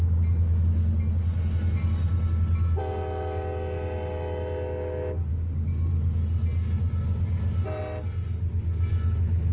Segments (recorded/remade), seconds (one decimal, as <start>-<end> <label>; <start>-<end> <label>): 0.0-5.3 recorded; 5.3-5.9 remade; 5.9-9.5 recorded